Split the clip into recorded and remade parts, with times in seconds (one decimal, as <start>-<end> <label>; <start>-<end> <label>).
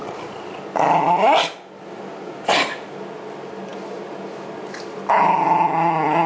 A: 0.0-6.3 recorded